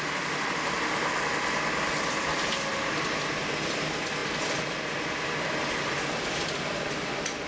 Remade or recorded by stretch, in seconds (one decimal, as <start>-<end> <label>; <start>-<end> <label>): 0.0-7.5 recorded